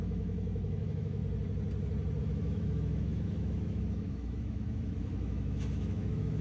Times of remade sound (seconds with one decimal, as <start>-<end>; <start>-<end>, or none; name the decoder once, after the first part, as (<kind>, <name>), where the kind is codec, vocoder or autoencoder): 0.0-1.2 (autoencoder, DAC-VAE); 2.2-6.4